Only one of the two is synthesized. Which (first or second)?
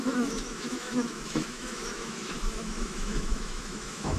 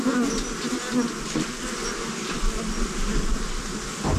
first